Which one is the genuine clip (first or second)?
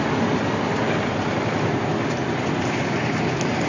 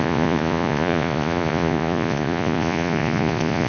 first